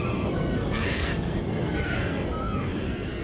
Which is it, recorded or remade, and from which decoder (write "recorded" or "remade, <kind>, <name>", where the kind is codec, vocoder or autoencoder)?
remade, codec, SNAC